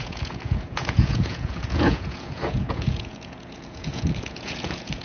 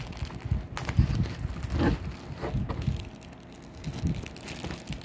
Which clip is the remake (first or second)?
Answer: first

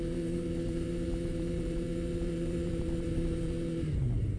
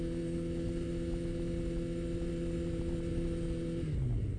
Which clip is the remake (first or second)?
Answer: first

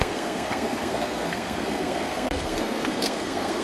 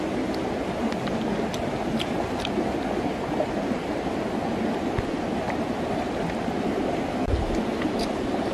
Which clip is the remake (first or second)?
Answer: first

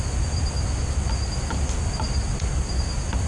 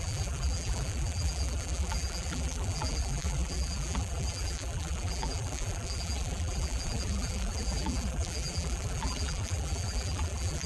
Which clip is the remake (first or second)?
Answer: second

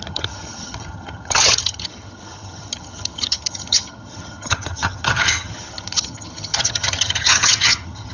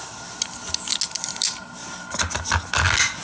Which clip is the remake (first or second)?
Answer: first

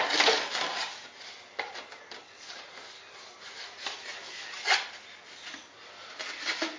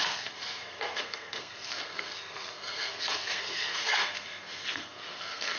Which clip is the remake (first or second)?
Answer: second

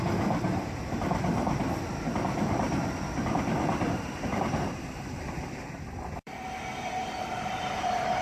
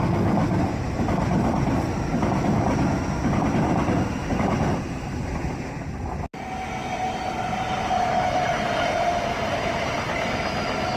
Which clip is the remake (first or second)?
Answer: first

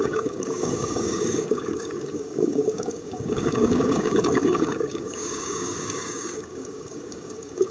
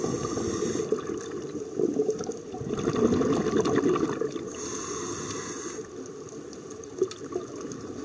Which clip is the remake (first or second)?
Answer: first